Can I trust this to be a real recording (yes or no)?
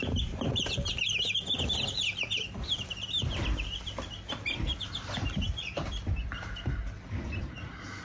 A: no